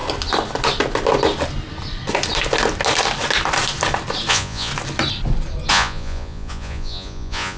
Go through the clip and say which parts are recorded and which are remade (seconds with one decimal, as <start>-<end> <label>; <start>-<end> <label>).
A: 0.0-4.3 recorded; 4.3-4.7 remade; 4.7-5.7 recorded; 5.7-7.6 remade